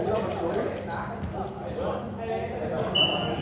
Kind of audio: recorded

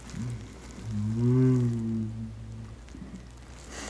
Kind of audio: recorded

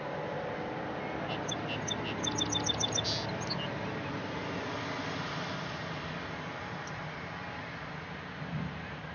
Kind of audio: recorded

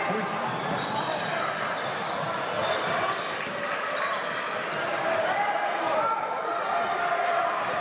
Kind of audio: recorded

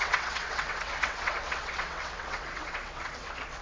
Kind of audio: remade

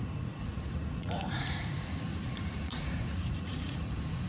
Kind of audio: remade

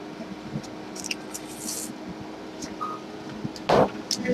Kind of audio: recorded